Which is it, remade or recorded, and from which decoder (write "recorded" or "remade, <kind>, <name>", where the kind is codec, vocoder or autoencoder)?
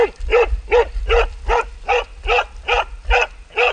recorded